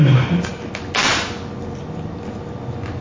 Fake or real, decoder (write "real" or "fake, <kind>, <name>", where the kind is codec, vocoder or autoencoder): real